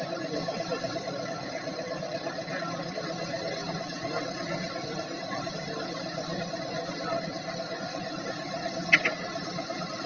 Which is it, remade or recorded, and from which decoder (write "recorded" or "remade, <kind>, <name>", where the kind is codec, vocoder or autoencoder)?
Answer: recorded